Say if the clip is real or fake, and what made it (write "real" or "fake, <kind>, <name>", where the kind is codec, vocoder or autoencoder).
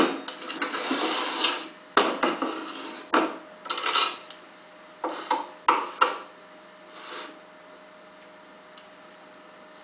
real